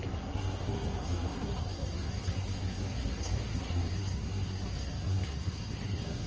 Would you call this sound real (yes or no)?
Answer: no